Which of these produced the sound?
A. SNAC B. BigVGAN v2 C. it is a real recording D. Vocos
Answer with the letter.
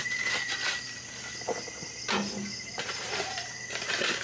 C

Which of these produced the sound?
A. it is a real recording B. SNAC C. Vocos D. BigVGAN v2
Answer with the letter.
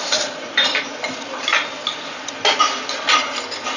A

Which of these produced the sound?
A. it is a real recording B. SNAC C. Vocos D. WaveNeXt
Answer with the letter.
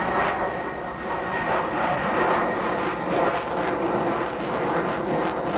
A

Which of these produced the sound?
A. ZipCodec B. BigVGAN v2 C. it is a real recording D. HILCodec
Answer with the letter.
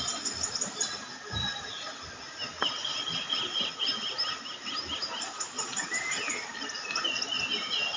C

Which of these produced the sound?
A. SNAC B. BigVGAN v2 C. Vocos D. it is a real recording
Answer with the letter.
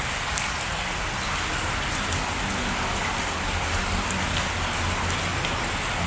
D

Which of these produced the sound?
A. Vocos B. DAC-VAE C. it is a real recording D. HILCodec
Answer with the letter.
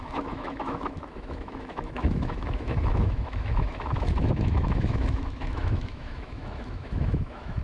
B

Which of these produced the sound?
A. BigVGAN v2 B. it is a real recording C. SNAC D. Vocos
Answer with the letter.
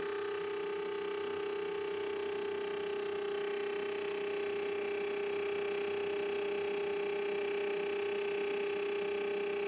B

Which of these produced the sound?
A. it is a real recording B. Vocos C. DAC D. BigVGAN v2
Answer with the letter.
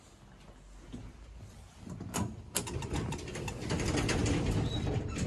A